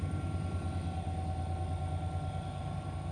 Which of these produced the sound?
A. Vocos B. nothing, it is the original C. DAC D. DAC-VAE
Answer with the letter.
B